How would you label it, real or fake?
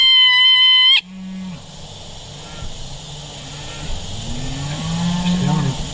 real